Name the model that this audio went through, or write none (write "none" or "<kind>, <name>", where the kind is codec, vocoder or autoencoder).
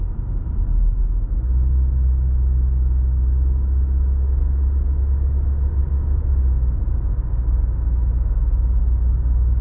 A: none